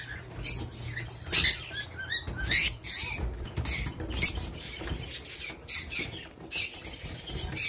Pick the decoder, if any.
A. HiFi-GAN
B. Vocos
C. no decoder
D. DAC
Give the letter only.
C